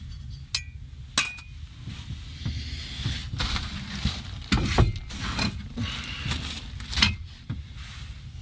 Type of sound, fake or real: real